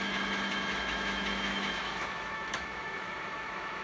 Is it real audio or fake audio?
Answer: fake